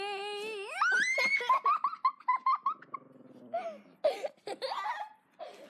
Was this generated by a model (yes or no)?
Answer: no